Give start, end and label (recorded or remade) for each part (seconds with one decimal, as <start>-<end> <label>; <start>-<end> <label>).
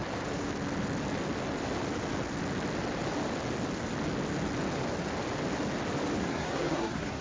0.0-6.2 recorded; 6.2-7.2 remade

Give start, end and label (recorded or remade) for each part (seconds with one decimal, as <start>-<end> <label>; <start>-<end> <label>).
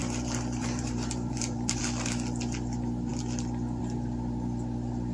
0.0-1.8 remade; 1.8-5.1 recorded